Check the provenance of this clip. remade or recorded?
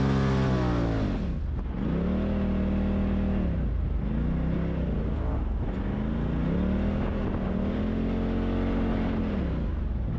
recorded